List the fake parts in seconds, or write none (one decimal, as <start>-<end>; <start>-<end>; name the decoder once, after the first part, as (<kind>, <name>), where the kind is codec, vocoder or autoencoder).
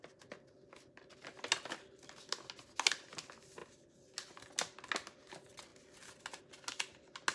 none